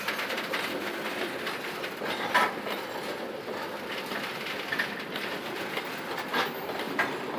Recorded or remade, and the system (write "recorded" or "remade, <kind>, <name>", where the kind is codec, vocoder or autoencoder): recorded